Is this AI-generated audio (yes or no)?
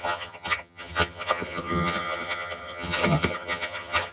yes